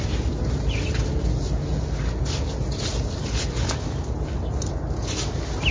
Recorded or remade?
recorded